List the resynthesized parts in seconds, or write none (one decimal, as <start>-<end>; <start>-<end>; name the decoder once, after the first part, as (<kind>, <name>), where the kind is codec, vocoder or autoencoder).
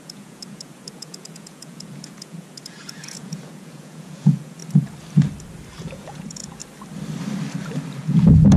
0.0-4.6 (vocoder, Vocos); 5.8-6.6; 8.0-8.6